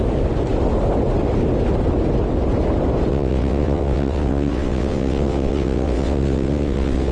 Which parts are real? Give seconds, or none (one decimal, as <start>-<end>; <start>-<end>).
0.0-3.1